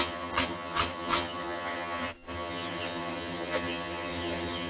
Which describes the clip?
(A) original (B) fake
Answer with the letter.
B